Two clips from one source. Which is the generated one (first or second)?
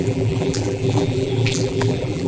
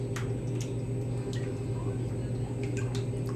first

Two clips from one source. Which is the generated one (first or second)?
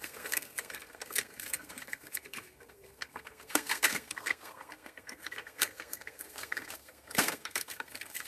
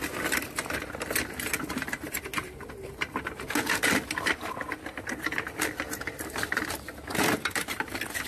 first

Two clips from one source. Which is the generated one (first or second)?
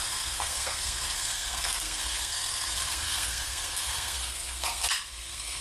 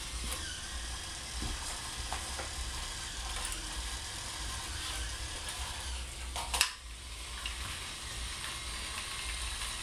first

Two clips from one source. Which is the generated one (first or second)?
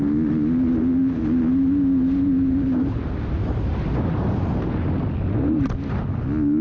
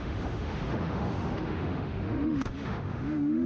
second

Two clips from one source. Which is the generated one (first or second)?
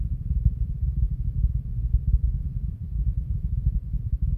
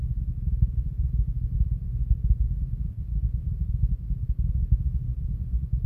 first